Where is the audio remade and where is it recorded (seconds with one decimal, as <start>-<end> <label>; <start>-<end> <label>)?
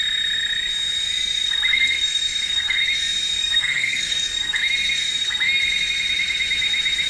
0.0-1.7 recorded; 1.7-2.8 remade; 2.8-3.4 recorded; 3.4-4.6 remade; 4.6-7.1 recorded